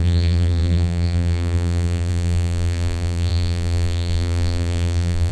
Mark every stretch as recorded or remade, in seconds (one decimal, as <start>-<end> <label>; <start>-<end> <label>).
0.0-5.3 remade